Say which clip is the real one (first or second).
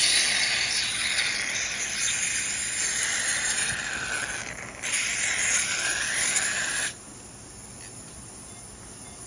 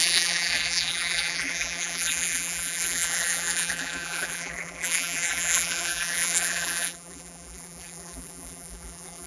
first